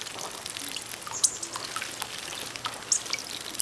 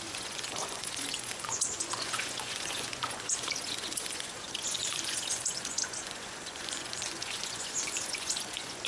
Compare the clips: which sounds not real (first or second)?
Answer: second